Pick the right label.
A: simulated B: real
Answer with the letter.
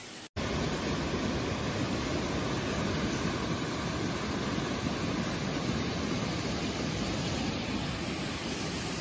B